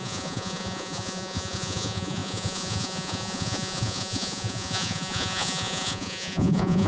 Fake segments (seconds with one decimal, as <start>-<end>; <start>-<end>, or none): 0.0-6.9